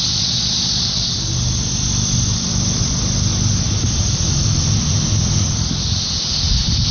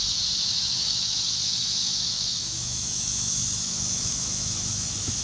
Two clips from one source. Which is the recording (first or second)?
first